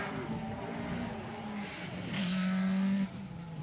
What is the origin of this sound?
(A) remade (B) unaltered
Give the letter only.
B